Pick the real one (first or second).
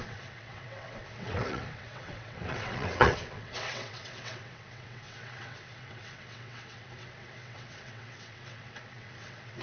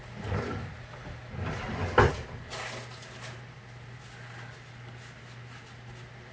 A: second